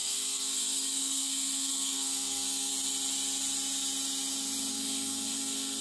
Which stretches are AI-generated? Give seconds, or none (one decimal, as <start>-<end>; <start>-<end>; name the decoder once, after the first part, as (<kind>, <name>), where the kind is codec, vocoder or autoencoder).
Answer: 0.0-2.7 (codec, SNAC); 4.7-5.8